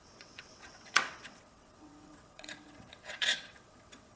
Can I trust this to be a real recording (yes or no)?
no